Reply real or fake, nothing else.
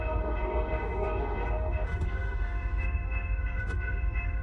fake